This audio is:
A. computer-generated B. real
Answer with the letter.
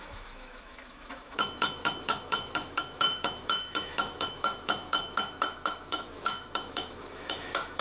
A